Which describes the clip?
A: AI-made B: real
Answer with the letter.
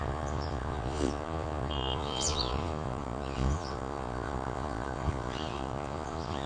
A